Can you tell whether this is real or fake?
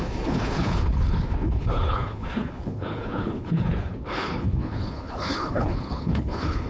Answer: fake